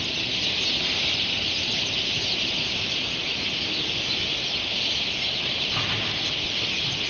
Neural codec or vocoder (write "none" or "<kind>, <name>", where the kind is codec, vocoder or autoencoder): none